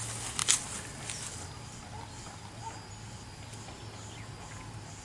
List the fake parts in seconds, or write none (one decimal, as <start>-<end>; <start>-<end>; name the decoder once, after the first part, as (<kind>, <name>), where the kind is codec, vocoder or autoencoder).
none